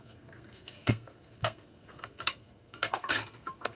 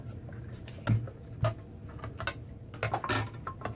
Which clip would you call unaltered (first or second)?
second